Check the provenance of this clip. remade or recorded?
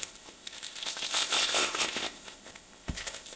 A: remade